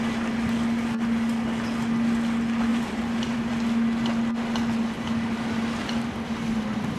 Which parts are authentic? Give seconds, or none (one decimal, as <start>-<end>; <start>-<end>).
0.0-2.7; 3.5-7.0